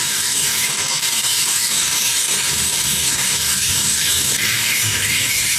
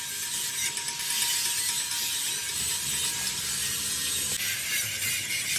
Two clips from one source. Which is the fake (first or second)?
first